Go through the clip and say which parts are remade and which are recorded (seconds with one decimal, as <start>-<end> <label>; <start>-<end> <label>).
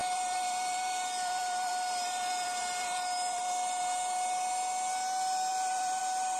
0.0-3.8 remade; 3.8-5.5 recorded; 5.5-6.0 remade; 6.0-6.4 recorded